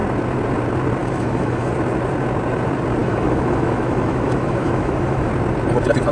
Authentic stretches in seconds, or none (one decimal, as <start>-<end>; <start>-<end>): 0.0-1.0; 1.7-3.0; 5.3-6.1